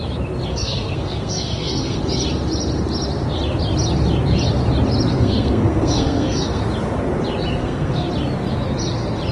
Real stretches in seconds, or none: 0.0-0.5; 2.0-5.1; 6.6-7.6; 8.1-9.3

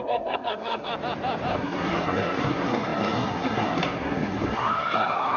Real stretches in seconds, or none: 0.9-1.5

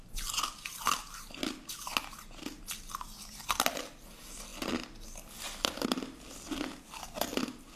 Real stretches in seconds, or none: 0.0-7.8

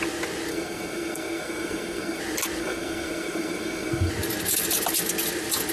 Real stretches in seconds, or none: 0.0-0.5; 2.2-2.6; 4.1-5.7